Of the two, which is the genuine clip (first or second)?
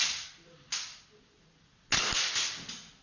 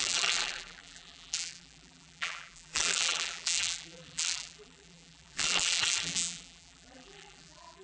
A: first